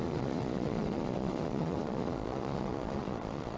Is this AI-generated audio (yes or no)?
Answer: yes